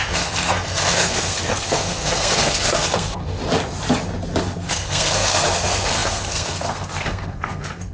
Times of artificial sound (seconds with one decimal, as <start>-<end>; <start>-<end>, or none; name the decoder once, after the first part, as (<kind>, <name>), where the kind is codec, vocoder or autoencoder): 0.0-3.4 (codec, SNAC); 4.4-7.9